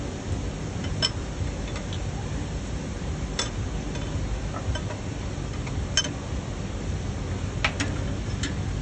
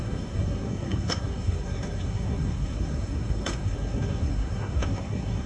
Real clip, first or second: first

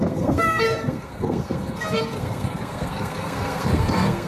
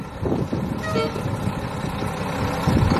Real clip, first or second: second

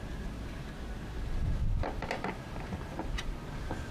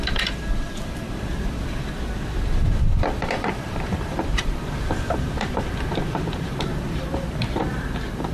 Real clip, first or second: first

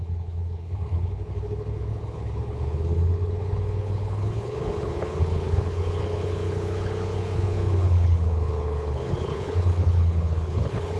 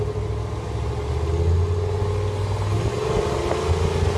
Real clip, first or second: second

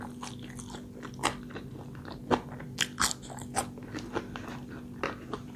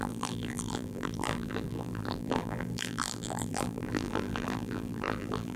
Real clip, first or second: first